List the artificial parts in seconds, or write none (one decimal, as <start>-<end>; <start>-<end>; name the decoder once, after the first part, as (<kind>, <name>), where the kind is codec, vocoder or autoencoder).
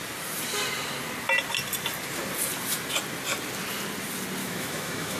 4.4-5.2 (autoencoder, DAC-VAE)